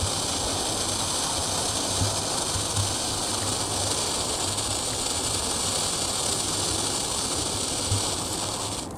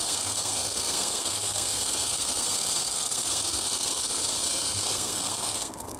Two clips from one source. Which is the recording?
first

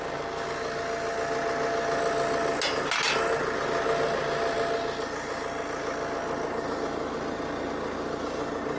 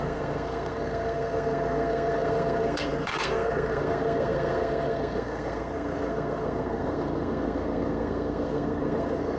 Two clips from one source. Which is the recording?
first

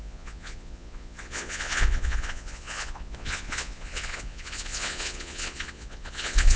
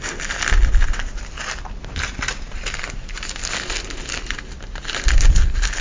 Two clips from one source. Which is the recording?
second